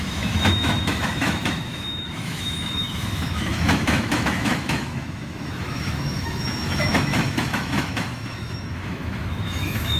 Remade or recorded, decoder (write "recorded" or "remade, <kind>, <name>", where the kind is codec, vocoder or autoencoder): remade, autoencoder, DAC-VAE